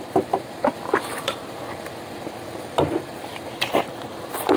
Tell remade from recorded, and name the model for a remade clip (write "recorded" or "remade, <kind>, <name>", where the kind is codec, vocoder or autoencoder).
remade, vocoder, BigVGAN v2